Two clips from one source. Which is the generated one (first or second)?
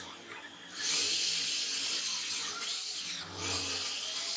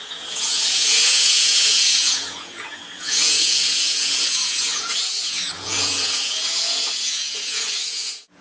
second